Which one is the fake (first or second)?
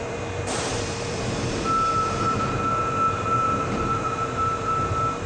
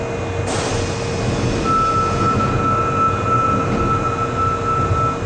first